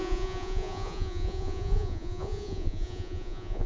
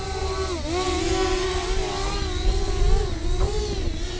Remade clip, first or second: first